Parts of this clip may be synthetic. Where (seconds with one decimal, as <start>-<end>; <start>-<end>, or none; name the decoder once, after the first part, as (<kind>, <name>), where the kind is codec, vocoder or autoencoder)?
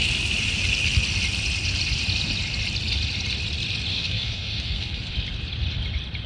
3.9-5.1 (codec, SNAC)